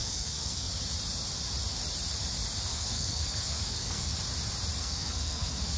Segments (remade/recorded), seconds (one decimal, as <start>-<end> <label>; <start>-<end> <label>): 0.0-0.7 remade; 0.7-2.7 recorded; 2.7-4.1 remade; 4.1-4.8 recorded; 4.8-5.8 remade